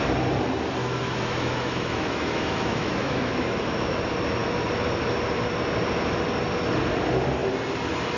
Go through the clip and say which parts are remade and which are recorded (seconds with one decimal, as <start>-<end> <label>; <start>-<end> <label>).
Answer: 0.0-0.8 recorded; 0.8-4.0 remade; 4.0-8.2 recorded